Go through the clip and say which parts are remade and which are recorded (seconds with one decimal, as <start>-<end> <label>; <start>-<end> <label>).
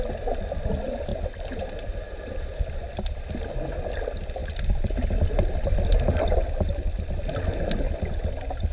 0.0-8.7 recorded